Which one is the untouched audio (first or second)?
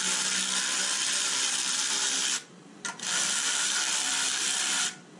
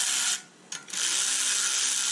second